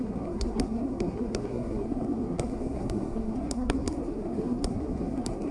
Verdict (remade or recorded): remade